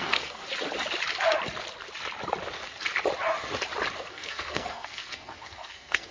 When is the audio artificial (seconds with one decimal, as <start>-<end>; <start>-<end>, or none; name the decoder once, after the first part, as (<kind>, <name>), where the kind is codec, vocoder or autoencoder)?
0.0-0.4 (codec, SNAC); 4.1-6.1